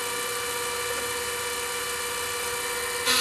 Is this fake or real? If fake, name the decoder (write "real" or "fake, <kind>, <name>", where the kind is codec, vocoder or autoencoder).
real